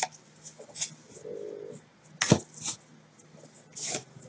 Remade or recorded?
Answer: recorded